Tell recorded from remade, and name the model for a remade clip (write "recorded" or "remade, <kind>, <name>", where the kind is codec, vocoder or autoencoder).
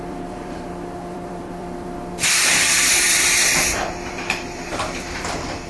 remade, vocoder, BigVGAN v2